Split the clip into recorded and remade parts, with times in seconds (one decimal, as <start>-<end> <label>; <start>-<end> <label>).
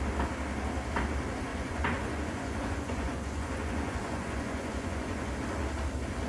0.0-1.5 recorded; 1.5-5.3 remade; 5.3-6.3 recorded